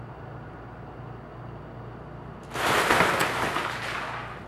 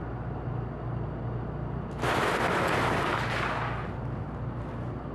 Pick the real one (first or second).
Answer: first